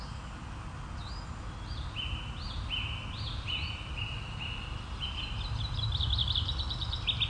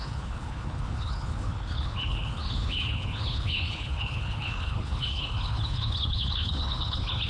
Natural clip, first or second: first